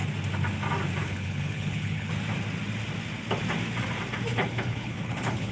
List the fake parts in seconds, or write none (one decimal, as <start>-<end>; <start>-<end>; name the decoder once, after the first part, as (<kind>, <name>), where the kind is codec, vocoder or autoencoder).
1.0-2.1 (codec, HILCodec); 4.3-5.5